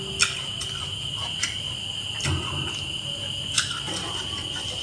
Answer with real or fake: real